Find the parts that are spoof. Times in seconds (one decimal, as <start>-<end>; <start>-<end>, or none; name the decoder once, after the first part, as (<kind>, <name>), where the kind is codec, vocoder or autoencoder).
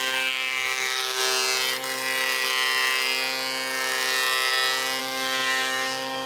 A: 0.0-1.2 (codec, DAC); 5.0-6.3